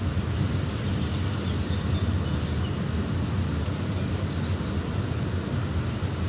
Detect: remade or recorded recorded